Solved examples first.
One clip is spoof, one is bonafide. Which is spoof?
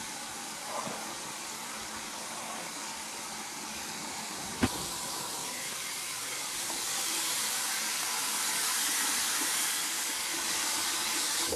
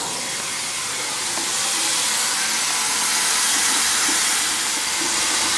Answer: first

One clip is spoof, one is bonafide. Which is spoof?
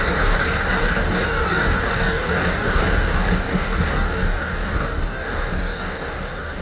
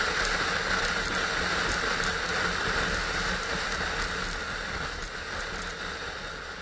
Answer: first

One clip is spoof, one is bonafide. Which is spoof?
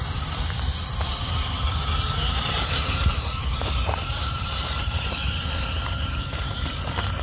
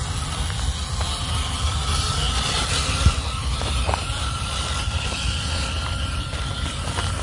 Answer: first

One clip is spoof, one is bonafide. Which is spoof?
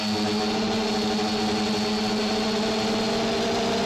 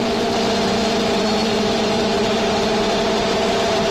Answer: second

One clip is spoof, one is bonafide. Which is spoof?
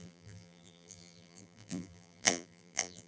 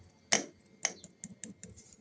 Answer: first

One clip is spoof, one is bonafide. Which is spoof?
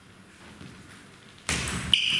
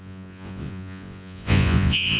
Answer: second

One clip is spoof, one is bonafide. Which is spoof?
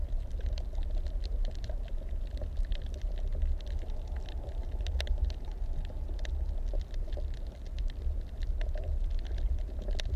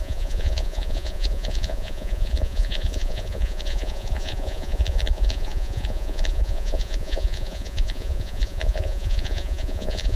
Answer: second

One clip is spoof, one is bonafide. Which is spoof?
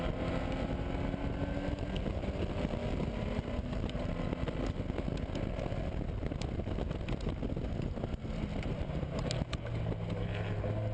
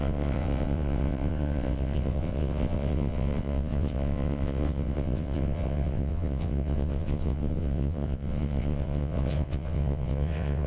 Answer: second